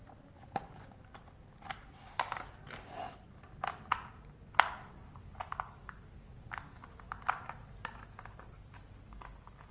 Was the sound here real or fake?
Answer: real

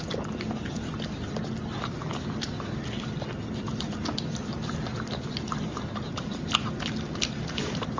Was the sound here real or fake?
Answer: real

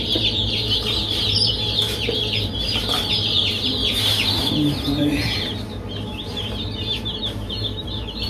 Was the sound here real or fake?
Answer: fake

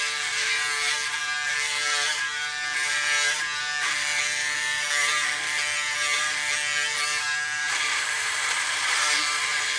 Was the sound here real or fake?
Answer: fake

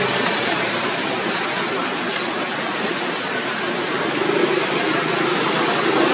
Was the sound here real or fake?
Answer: real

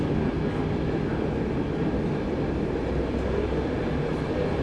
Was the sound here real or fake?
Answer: real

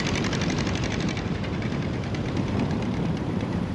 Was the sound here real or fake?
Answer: fake